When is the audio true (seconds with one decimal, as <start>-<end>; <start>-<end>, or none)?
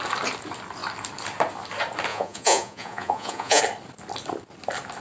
0.0-2.1; 3.6-5.0